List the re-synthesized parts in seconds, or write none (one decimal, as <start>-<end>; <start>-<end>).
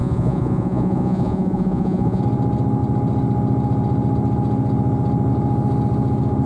0.0-2.2